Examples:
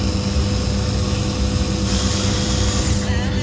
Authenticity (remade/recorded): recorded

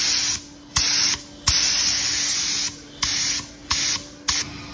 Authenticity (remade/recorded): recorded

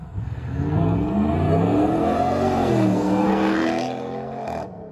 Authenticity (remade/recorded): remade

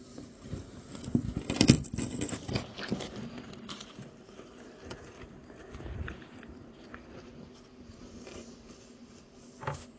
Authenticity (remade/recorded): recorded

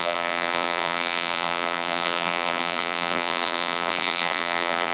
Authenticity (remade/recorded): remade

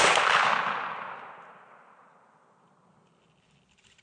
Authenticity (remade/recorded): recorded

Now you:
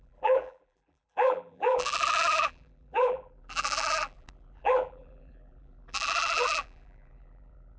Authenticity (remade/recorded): remade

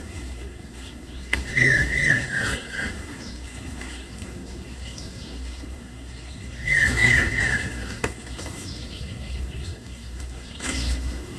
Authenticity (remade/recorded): remade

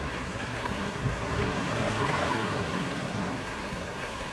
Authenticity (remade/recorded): remade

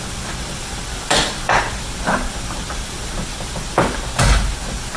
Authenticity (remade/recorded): remade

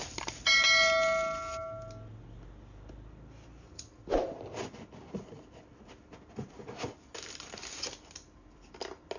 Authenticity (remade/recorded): recorded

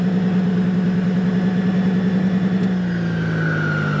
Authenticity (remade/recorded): recorded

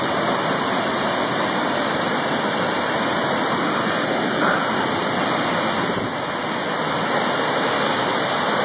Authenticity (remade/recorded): recorded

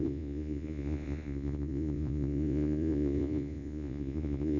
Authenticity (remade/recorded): remade